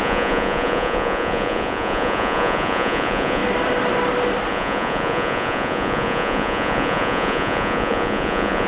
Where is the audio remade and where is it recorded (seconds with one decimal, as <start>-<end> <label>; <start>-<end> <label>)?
0.0-3.4 remade; 3.4-4.5 recorded; 4.5-8.7 remade